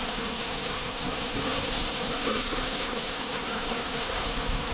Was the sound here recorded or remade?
remade